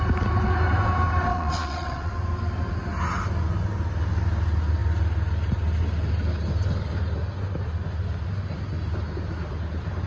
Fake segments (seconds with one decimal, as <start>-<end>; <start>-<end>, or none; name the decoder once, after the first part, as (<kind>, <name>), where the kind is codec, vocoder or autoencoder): 1.3-2.1 (vocoder, WaveNeXt)

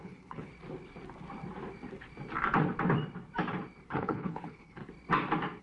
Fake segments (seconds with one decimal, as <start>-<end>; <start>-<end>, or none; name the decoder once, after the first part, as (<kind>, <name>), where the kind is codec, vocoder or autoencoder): 0.0-0.5 (codec, HILCodec); 3.9-4.8

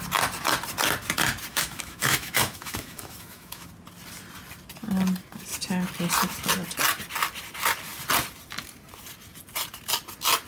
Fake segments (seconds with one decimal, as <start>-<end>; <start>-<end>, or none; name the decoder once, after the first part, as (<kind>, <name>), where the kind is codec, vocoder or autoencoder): 1.5-3.7 (autoencoder, DAC-VAE)

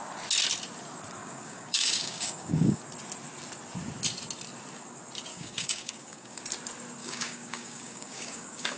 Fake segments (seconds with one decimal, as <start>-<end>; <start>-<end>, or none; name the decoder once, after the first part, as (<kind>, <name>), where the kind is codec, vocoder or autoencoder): 1.2-2.8 (codec, DAC); 5.3-6.4; 7.0-8.8

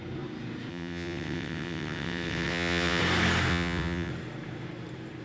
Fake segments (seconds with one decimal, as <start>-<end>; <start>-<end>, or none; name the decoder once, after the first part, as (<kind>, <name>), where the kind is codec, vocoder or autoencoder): 0.7-3.0 (vocoder, WaveNeXt); 3.5-4.1

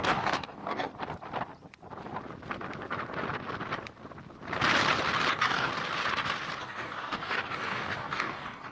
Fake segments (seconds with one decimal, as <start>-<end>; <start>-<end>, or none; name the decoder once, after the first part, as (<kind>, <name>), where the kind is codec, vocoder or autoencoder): 0.0-0.9 (codec, DAC); 5.3-5.7; 6.6-8.7